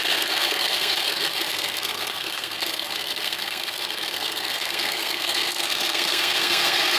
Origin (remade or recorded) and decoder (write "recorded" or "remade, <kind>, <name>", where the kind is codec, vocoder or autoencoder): remade, codec, SNAC